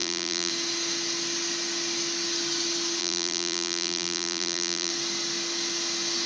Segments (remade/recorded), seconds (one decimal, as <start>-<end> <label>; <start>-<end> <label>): 0.0-0.5 remade; 0.5-3.0 recorded; 3.0-4.9 remade; 4.9-6.3 recorded